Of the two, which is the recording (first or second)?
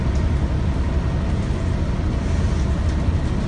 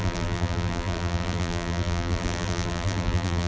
first